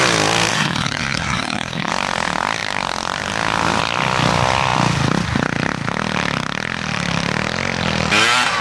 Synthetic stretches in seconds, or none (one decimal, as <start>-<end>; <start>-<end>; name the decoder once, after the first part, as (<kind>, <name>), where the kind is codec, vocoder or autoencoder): 0.5-1.9 (codec, SNAC)